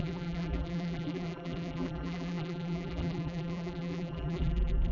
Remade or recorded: remade